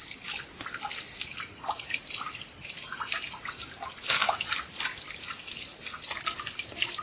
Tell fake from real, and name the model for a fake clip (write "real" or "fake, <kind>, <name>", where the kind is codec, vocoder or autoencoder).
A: real